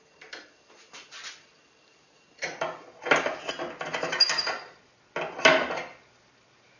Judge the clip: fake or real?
real